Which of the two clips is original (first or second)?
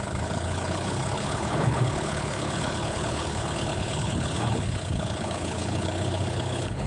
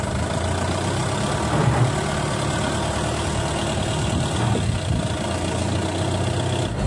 second